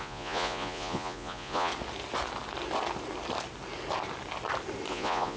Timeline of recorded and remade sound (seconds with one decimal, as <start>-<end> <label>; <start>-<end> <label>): 0.0-1.7 remade; 1.7-4.9 recorded; 4.9-5.4 remade